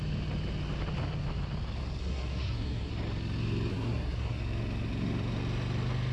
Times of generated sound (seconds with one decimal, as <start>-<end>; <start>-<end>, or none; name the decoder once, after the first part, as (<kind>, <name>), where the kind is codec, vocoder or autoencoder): 2.0-2.9 (codec, SNAC); 3.7-4.4